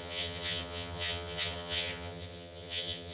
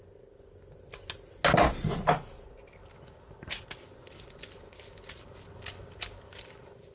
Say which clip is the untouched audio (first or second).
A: second